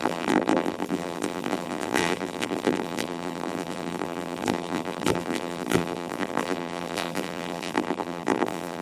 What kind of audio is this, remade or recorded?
remade